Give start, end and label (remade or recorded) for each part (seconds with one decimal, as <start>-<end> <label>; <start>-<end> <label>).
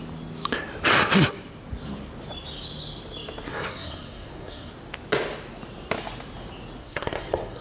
0.0-3.5 recorded; 3.5-4.7 remade; 4.7-6.8 recorded; 6.8-7.6 remade